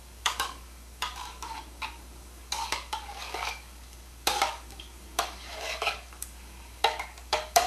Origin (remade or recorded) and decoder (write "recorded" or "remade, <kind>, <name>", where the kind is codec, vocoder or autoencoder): remade, codec, DAC